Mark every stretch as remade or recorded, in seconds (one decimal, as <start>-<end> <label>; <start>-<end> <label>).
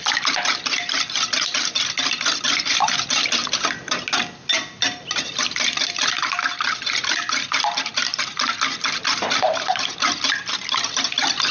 0.0-11.5 recorded